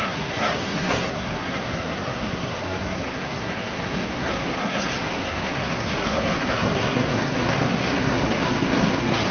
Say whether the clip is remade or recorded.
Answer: remade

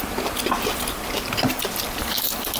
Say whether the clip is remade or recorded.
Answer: recorded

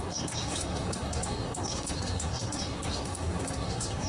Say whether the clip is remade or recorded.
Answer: remade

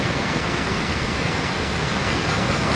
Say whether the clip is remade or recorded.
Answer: remade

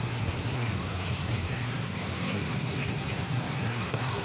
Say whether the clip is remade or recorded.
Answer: remade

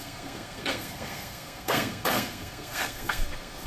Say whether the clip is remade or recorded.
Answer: remade